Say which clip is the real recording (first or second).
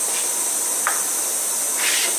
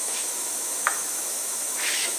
first